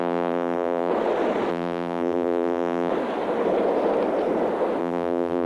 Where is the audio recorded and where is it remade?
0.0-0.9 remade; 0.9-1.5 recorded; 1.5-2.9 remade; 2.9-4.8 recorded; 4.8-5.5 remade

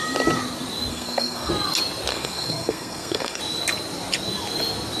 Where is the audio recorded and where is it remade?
0.0-0.9 recorded; 0.9-1.5 remade; 1.5-2.1 recorded; 2.1-3.4 remade; 3.4-5.0 recorded

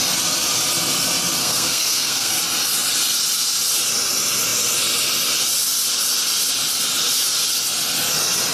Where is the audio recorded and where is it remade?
0.0-1.4 recorded; 1.4-2.4 remade; 2.4-8.5 recorded

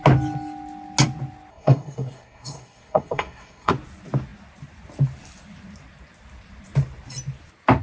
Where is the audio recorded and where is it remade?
0.0-1.5 recorded; 1.5-3.7 remade; 3.7-7.8 recorded

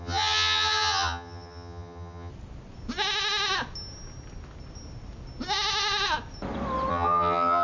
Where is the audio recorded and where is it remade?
0.0-2.3 remade; 2.3-6.9 recorded; 6.9-7.6 remade

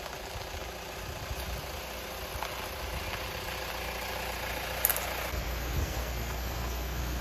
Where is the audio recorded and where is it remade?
0.0-5.3 recorded; 5.3-7.2 remade

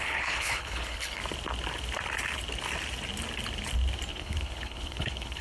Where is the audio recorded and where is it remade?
0.0-1.2 remade; 1.2-4.1 recorded; 4.1-5.4 remade

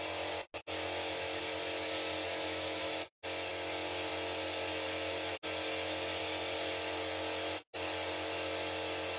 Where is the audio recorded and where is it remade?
0.0-9.2 recorded